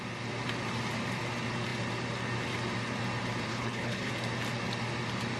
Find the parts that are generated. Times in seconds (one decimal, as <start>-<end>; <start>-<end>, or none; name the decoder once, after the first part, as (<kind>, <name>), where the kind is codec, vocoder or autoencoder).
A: 3.5-4.1 (codec, HILCodec)